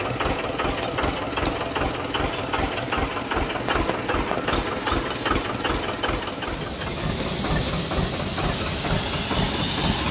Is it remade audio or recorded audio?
recorded